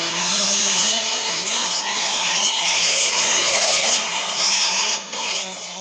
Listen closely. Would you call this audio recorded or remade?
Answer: remade